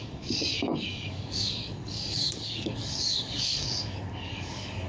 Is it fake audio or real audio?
fake